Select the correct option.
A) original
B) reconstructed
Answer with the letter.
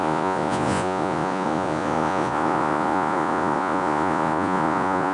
B